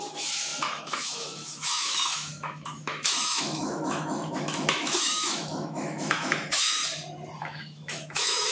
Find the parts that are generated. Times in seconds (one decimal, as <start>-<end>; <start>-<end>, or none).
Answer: 0.0-6.8; 7.4-8.5